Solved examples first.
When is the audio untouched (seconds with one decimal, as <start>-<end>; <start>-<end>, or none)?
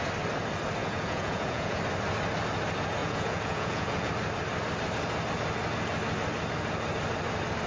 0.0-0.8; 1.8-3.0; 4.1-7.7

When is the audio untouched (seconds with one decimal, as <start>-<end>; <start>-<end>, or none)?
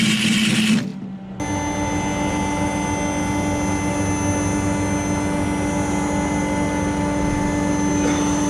0.0-8.5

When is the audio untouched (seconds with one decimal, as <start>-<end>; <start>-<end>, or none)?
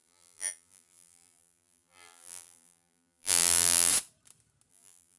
3.9-4.7